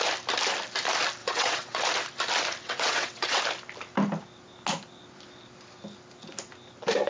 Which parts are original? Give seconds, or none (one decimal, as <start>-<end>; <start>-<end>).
0.0-1.2; 1.8-2.6; 3.4-7.1